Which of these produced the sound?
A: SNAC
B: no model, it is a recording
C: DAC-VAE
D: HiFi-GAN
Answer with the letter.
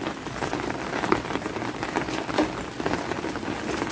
B